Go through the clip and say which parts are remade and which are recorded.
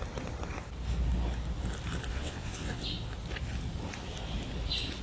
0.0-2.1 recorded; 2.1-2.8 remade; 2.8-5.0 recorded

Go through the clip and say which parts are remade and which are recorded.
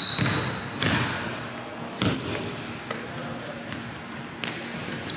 0.0-5.2 recorded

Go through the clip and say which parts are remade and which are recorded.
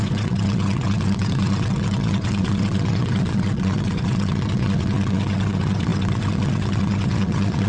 0.0-7.7 remade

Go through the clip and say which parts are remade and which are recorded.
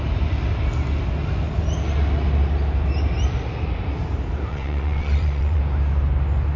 0.0-4.5 recorded; 4.5-5.6 remade; 5.6-6.6 recorded